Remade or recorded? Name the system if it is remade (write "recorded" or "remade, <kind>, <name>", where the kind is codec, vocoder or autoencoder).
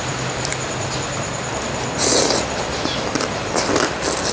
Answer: recorded